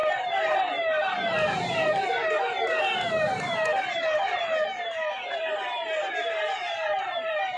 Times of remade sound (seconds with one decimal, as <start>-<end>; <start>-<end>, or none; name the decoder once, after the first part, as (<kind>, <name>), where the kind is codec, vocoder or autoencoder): 0.0-7.6 (vocoder, BigVGAN v2)